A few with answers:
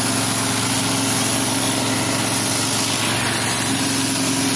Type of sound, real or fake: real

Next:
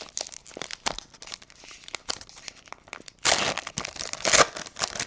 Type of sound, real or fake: real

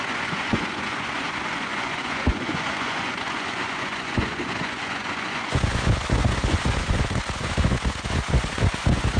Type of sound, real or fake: fake